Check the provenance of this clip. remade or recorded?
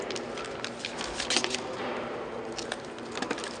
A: recorded